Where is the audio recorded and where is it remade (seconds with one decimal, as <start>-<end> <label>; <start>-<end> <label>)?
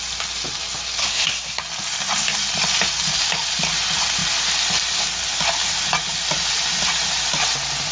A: 0.0-1.0 recorded; 1.0-1.6 remade; 1.6-7.9 recorded